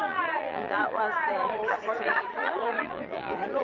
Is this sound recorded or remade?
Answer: remade